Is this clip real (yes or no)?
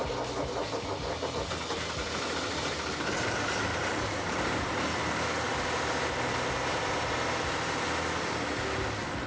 yes